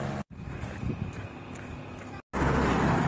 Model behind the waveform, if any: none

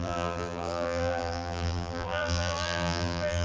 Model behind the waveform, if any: vocoder, BigVGAN v2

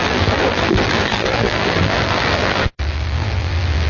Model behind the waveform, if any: vocoder, BigVGAN v2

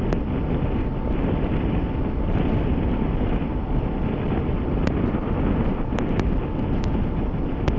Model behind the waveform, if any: none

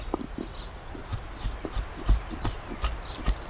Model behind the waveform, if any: none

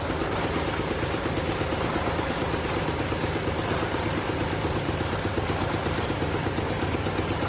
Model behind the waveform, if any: none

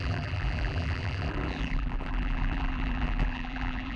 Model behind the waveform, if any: vocoder, BigVGAN v2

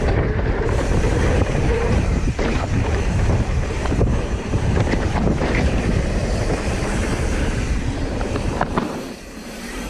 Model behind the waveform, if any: vocoder, BigVGAN v2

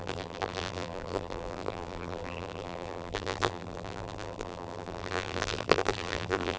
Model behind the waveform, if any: vocoder, BigVGAN v2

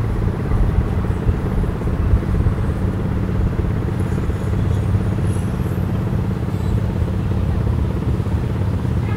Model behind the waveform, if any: vocoder, BigVGAN v2